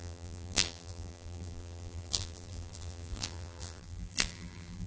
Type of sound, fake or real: fake